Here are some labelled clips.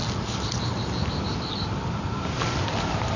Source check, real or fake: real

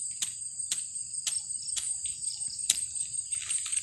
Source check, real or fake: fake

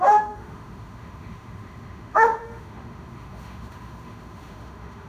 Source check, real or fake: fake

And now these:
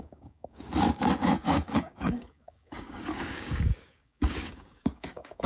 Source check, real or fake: fake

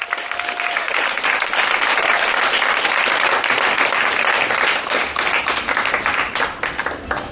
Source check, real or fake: real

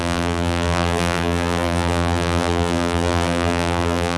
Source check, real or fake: fake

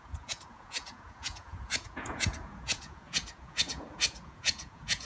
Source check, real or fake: fake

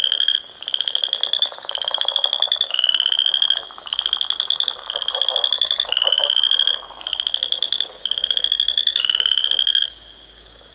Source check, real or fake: fake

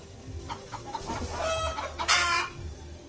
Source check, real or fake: real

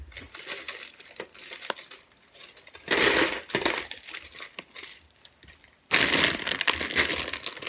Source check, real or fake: real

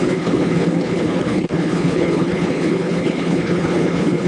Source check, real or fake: fake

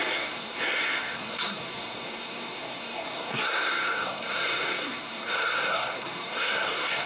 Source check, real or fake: fake